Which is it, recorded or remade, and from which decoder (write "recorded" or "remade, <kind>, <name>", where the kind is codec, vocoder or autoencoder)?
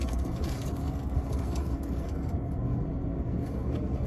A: remade, codec, SNAC